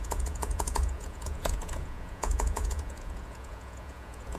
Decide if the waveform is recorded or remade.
remade